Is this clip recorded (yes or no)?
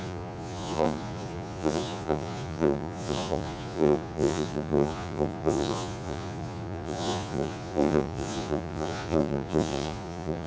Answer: no